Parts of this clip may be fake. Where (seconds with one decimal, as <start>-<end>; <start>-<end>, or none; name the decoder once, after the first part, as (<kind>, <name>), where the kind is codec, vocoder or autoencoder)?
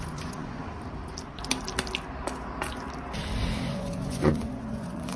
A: 0.0-0.6 (vocoder, Vocos); 3.7-5.2